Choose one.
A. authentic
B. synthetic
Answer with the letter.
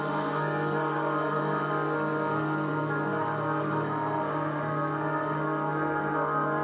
B